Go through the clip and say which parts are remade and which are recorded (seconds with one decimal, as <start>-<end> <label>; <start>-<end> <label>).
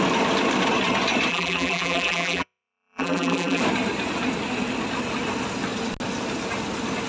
0.0-1.3 recorded; 1.3-3.6 remade; 3.6-7.1 recorded